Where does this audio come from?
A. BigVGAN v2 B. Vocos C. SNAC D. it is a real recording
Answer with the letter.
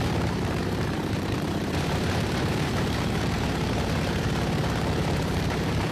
A